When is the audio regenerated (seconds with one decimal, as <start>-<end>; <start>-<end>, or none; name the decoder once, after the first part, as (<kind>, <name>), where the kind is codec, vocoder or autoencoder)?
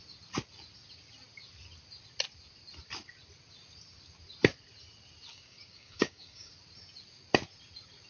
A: 5.3-6.5 (codec, DAC)